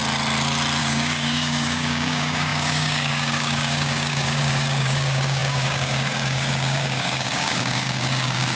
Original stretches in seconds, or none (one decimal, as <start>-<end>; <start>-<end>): 0.0-0.8